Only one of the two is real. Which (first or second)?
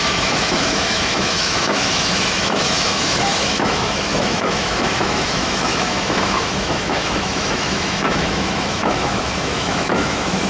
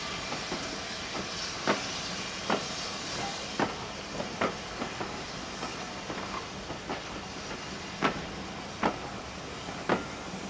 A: second